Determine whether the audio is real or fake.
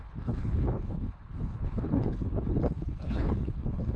fake